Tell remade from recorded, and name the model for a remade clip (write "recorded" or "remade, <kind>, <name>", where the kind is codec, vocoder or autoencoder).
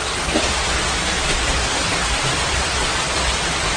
recorded